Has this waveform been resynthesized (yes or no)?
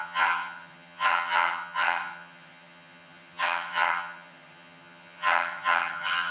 yes